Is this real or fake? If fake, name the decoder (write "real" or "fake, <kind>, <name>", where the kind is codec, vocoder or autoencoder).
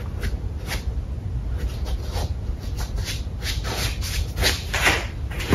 real